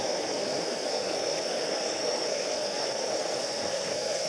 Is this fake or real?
fake